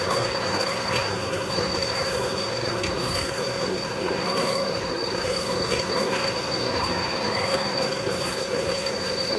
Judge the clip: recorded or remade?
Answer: remade